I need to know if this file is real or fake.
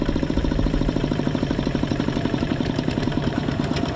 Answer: fake